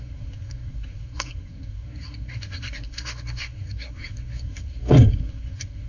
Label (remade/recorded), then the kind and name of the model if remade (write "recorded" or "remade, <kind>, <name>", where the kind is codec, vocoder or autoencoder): remade, codec, SNAC